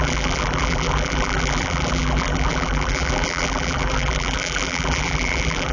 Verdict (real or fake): fake